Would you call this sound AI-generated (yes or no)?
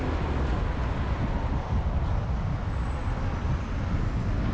no